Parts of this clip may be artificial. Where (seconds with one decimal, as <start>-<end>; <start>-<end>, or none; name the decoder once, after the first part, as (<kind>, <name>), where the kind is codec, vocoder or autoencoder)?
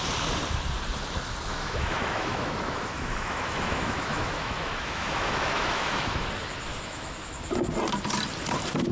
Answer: 1.5-6.3 (autoencoder, DAC-VAE); 6.7-7.3